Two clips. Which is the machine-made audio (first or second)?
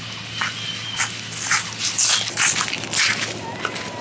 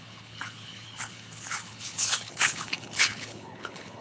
second